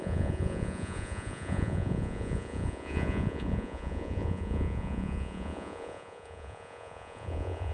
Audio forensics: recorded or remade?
remade